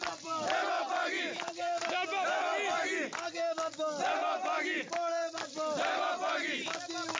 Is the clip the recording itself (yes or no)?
yes